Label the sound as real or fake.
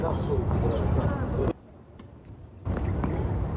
fake